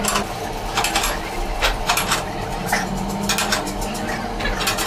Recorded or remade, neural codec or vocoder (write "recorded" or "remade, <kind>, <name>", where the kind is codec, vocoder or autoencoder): recorded